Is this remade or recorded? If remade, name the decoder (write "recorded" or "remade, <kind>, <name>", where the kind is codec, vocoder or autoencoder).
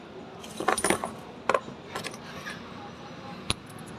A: recorded